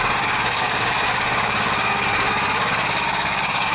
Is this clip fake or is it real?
fake